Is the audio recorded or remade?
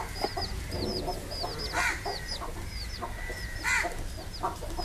recorded